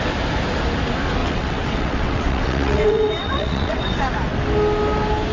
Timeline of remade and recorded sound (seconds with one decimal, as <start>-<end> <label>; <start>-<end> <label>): 0.0-1.2 recorded; 1.2-4.0 remade; 4.0-5.3 recorded